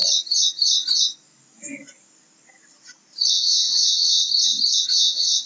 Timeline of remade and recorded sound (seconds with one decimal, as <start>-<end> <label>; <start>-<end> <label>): 0.0-3.3 recorded; 3.3-4.2 remade; 4.2-4.9 recorded; 4.9-5.5 remade